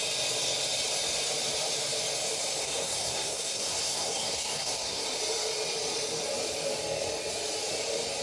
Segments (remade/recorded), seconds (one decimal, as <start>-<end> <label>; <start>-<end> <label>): 0.0-2.6 recorded; 2.6-5.0 remade; 5.0-8.2 recorded